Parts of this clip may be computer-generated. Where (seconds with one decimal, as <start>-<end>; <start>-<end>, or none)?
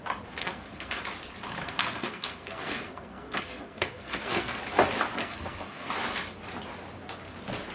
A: 0.4-1.0; 1.6-4.6; 5.2-5.9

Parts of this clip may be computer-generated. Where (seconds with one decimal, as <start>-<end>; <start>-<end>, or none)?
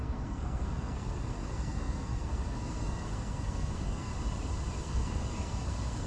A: 0.0-4.1; 4.8-6.1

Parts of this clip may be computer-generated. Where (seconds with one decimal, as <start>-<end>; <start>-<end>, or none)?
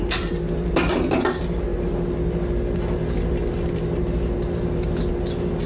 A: none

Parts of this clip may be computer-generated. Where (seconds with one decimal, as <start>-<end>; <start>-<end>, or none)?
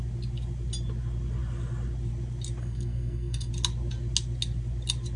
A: 2.6-3.5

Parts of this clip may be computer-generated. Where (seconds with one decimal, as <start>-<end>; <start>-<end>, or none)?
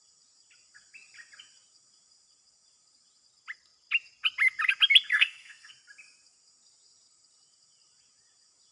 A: 5.1-5.7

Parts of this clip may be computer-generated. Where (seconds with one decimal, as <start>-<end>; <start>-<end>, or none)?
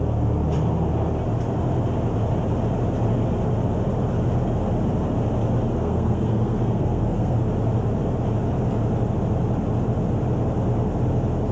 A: 5.7-7.4